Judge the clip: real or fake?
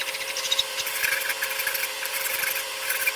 fake